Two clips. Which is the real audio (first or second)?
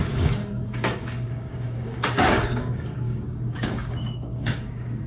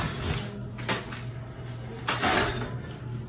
second